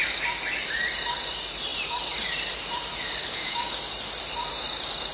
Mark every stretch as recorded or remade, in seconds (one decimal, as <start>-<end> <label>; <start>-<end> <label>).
0.0-3.2 recorded; 3.2-3.8 remade; 3.8-5.1 recorded